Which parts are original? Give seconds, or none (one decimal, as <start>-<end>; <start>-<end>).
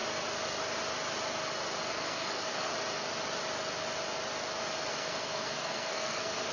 0.0-1.9; 2.7-4.9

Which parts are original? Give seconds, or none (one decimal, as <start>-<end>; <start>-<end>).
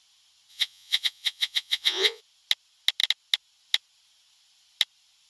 0.0-0.5; 2.2-5.3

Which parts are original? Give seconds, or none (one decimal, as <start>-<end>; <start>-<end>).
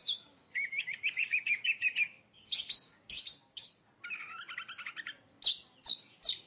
3.9-6.5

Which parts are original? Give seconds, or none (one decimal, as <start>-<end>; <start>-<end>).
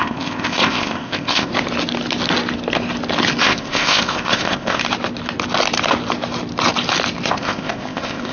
1.5-3.4; 4.8-7.3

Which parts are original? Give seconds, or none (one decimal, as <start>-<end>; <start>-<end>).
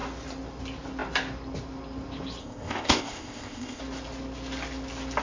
0.0-2.4; 3.8-5.2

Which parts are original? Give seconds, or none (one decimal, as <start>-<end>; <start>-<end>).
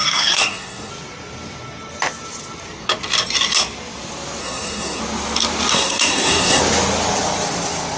0.9-4.4; 5.0-5.7; 6.6-8.0